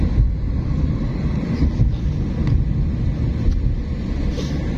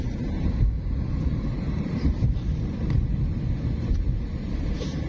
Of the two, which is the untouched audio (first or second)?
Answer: first